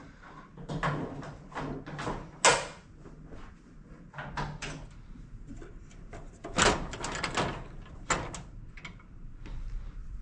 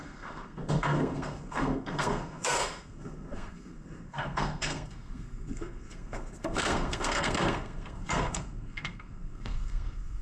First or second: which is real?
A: first